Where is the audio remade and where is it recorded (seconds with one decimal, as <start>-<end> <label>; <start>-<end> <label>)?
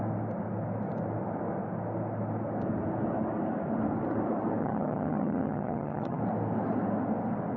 0.0-4.6 recorded; 4.6-6.2 remade; 6.2-7.6 recorded